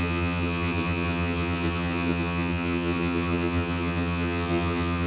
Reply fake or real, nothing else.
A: fake